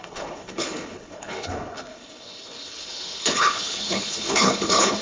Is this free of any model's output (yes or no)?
no